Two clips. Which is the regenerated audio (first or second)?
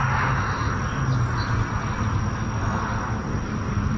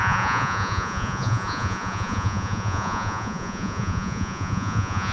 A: second